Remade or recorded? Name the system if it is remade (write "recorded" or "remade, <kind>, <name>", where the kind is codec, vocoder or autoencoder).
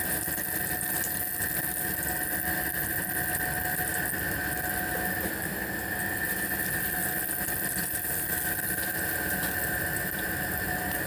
recorded